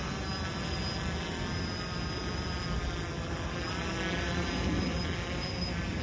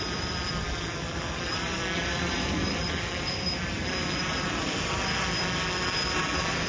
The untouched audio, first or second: first